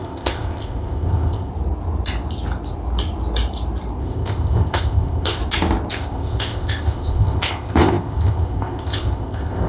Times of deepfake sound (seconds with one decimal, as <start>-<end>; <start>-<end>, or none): 0.0-1.5; 4.0-5.4; 5.9-9.7